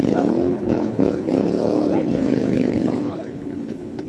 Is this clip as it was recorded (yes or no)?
no